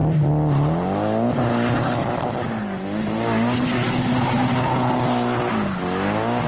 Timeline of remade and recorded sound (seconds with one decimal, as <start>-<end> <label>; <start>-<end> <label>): 0.0-6.5 recorded